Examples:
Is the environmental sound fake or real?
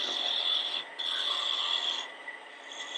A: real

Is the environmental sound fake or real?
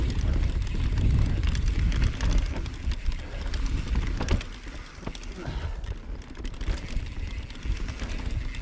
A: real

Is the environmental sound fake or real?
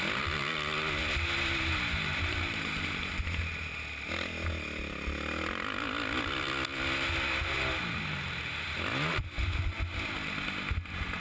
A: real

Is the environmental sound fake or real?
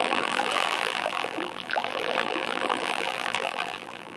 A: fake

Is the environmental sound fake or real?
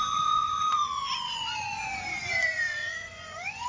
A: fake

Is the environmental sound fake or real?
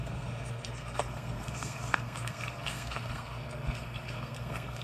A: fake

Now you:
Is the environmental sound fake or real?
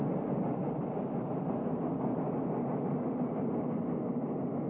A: real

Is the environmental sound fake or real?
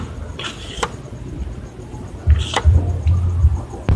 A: real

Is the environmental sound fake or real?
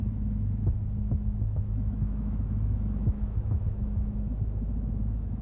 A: fake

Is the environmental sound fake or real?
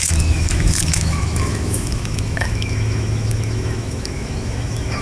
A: fake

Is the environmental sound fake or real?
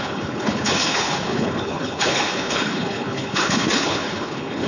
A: fake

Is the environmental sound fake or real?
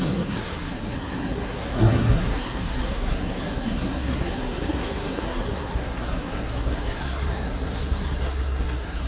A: fake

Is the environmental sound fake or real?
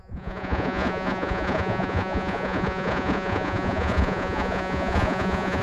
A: fake